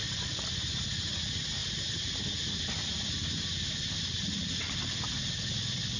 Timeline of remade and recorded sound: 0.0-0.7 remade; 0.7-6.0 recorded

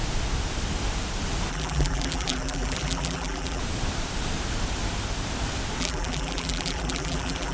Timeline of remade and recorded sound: 0.0-1.5 recorded; 1.5-3.6 remade; 3.6-5.8 recorded; 5.8-7.5 remade

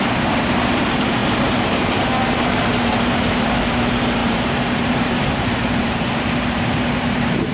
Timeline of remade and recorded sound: 0.0-7.5 remade